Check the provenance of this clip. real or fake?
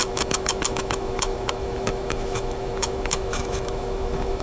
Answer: fake